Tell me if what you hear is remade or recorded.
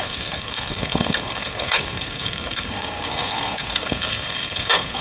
remade